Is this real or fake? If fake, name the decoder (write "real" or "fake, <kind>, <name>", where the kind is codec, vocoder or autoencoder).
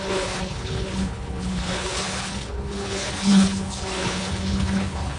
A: fake, codec, HILCodec